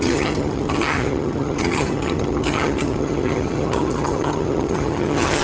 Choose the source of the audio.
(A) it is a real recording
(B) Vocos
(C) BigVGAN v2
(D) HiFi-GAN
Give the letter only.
D